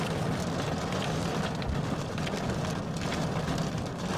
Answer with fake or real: real